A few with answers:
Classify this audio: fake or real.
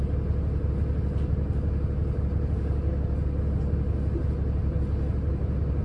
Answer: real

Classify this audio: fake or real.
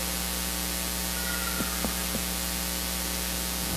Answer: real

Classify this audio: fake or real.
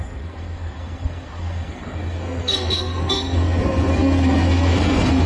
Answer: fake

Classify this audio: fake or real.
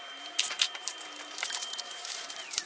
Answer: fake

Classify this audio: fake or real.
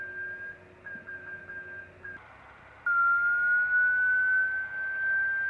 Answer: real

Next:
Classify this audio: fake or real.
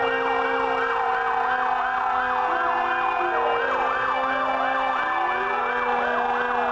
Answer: real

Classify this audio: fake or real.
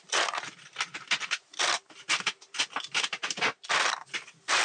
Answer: real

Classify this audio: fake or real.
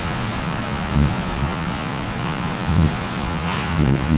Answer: fake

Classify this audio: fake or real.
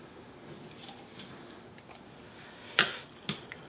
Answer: real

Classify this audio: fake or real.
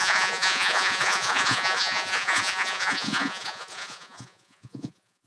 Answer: fake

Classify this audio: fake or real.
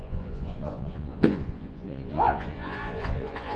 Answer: fake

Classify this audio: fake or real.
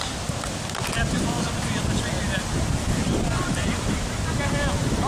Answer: real